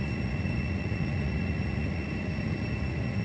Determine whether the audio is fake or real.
fake